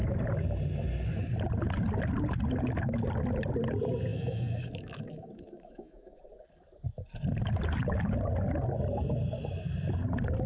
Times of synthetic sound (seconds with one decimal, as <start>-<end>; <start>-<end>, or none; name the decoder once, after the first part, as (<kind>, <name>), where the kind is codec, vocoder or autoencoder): 4.1-6.2 (autoencoder, DAC-VAE)

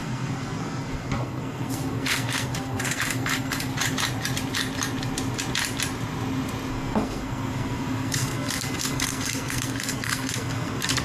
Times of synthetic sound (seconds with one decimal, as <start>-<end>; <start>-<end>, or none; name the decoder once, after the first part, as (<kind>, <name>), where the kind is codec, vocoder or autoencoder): 0.0-3.7 (codec, SNAC); 6.7-11.0